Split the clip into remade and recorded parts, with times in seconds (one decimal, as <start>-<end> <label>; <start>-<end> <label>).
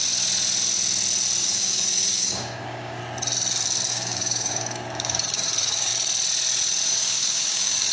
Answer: 0.0-1.4 recorded; 1.4-3.0 remade; 3.0-3.9 recorded; 3.9-5.9 remade; 5.9-6.9 recorded; 6.9-7.9 remade